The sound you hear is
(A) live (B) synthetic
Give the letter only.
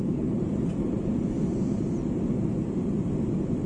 B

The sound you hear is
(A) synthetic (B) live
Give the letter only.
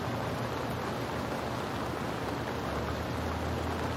B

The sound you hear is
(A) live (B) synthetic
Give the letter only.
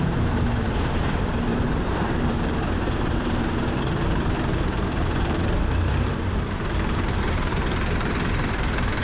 B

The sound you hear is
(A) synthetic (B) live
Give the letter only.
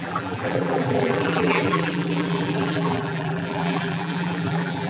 A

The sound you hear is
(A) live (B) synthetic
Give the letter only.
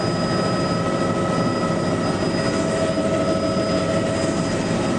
A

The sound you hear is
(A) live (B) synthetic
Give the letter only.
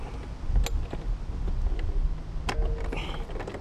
A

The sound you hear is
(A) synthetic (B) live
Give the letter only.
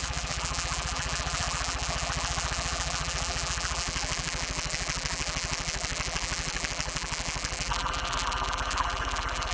A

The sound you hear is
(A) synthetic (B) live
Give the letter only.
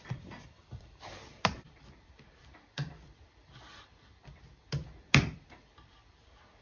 A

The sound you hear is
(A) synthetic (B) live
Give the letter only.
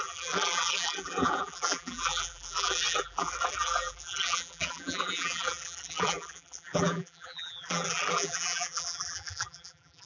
A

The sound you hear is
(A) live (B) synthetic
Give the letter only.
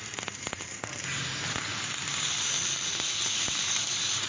B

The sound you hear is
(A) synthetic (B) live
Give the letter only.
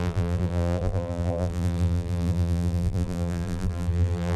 A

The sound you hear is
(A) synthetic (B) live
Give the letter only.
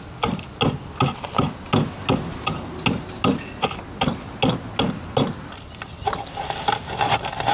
B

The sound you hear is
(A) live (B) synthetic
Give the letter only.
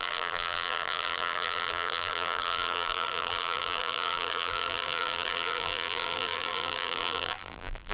B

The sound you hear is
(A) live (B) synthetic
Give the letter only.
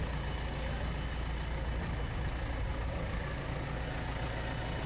A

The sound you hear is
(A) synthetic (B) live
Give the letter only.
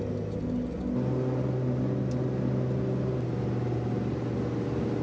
B